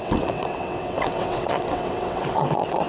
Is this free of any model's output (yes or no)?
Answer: no